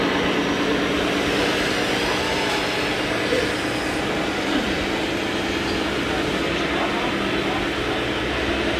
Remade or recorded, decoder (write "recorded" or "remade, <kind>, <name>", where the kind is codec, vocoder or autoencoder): recorded